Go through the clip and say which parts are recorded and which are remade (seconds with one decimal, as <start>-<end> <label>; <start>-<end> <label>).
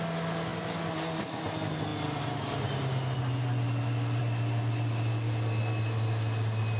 0.0-6.8 recorded